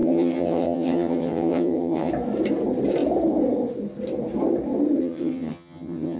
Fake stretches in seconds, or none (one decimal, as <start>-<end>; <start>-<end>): 0.0-2.1; 5.0-6.2